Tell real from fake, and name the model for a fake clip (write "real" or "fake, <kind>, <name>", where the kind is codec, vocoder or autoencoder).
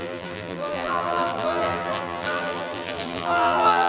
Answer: fake, vocoder, BigVGAN v2